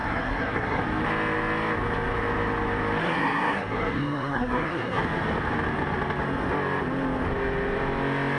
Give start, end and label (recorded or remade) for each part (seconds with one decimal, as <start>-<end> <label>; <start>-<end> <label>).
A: 0.0-0.8 remade; 0.8-3.0 recorded; 3.0-5.0 remade; 5.0-8.4 recorded